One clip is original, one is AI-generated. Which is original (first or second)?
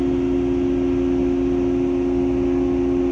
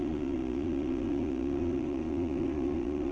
first